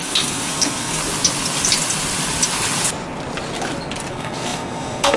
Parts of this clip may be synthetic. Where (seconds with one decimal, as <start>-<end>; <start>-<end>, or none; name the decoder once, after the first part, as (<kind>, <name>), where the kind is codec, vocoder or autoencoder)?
0.0-1.0 (codec, SNAC); 4.1-5.2